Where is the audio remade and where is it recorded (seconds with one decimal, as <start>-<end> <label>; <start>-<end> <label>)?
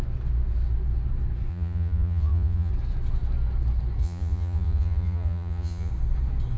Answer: 0.0-1.5 recorded; 1.5-2.7 remade; 2.7-4.0 recorded; 4.0-5.9 remade; 5.9-6.6 recorded